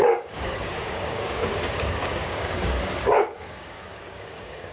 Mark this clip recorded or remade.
remade